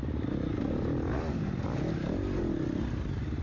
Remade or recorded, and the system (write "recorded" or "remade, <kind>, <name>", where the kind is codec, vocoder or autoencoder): recorded